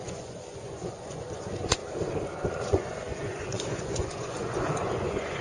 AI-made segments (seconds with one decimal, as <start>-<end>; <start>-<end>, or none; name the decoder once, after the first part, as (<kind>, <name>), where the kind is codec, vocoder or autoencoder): 0.0-1.8 (vocoder, Vocos); 2.7-5.4